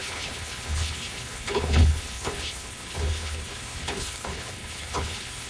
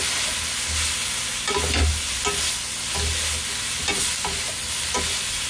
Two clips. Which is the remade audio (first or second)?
first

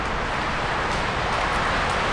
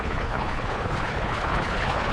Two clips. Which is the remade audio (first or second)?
second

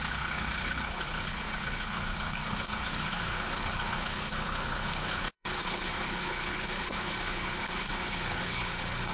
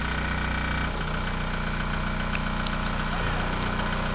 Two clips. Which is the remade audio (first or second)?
first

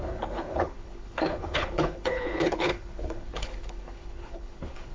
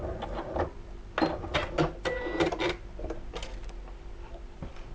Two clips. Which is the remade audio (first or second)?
first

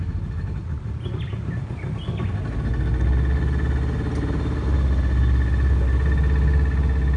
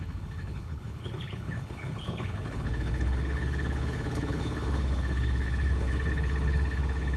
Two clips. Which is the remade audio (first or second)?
second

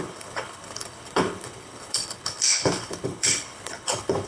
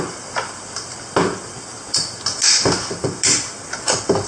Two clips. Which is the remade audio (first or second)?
first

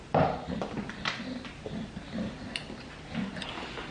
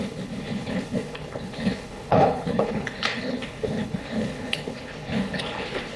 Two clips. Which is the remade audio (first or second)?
second